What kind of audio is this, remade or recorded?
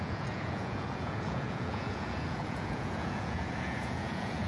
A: remade